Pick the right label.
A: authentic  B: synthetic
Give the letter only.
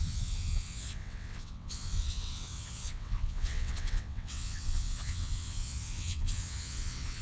B